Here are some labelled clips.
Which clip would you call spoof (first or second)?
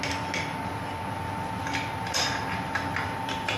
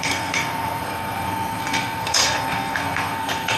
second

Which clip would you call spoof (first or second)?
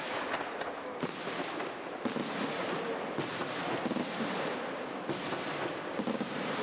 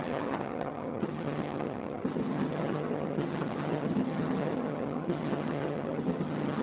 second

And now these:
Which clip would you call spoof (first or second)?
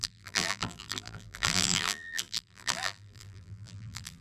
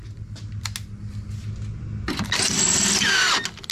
first